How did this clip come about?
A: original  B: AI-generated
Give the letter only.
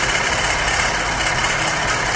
A